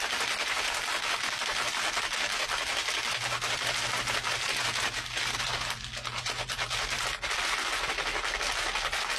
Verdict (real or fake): real